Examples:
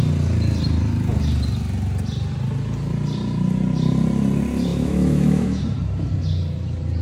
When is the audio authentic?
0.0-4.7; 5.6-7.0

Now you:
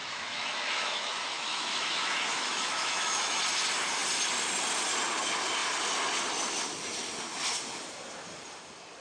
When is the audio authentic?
3.4-9.0

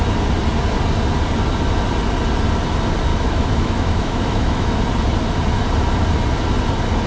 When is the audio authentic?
0.0-3.1; 4.8-7.1